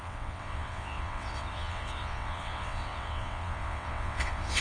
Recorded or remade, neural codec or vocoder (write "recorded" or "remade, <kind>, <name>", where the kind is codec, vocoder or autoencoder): remade, vocoder, WaveNeXt